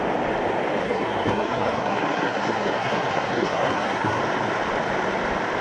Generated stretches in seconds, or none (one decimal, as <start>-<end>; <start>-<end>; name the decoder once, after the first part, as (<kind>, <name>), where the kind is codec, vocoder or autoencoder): 0.8-4.2 (codec, SNAC)